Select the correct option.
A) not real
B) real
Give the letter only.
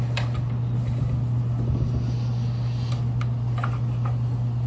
B